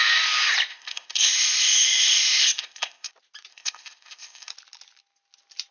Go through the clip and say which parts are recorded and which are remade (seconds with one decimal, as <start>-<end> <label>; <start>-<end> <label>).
0.0-0.7 recorded; 0.7-3.1 remade; 3.1-3.5 recorded; 3.5-4.5 remade; 4.5-5.7 recorded